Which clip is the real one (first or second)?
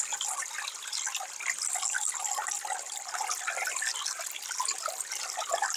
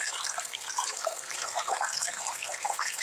first